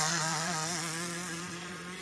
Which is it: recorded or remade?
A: remade